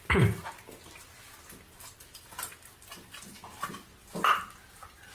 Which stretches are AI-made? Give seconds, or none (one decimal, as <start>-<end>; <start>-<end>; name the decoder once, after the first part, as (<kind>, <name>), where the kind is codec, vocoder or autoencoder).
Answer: none